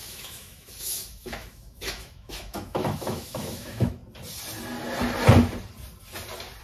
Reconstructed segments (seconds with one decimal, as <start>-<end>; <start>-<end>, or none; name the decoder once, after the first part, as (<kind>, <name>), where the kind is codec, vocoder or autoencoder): 0.0-4.0 (autoencoder, DAC-VAE)